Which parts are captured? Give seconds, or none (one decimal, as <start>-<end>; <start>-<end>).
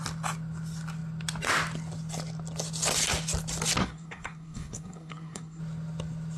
0.0-3.8; 5.6-6.4